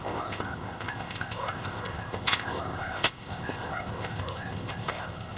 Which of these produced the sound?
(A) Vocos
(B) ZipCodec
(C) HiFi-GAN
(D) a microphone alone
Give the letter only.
B